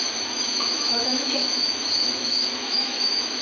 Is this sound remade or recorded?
remade